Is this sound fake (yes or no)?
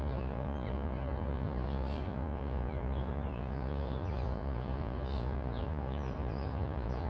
yes